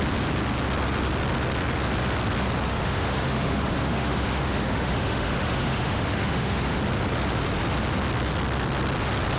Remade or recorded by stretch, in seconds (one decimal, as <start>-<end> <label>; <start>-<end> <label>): 0.0-2.7 recorded; 2.7-6.8 remade; 6.8-9.4 recorded